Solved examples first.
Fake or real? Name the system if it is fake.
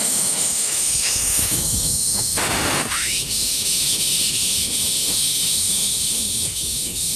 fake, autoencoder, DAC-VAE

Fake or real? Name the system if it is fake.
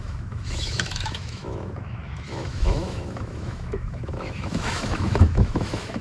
fake, autoencoder, DAC-VAE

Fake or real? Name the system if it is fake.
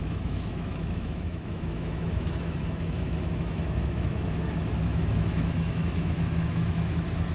fake, autoencoder, DAC-VAE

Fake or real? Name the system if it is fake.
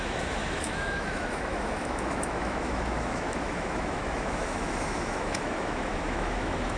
fake, autoencoder, DAC-VAE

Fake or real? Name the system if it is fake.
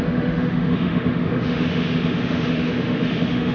fake, autoencoder, DAC-VAE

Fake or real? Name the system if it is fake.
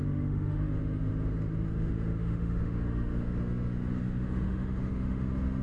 fake, autoencoder, DAC-VAE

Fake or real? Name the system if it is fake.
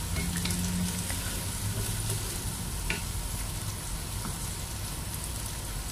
real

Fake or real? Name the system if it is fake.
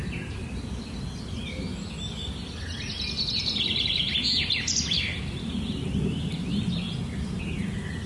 real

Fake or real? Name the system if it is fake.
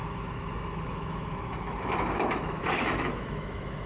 fake, autoencoder, DAC-VAE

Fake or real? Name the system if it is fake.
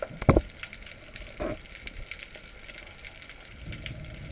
real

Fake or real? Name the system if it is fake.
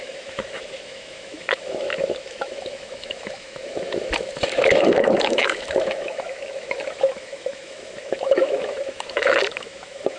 fake, autoencoder, DAC-VAE